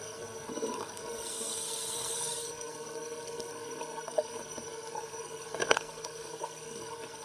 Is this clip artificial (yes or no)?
yes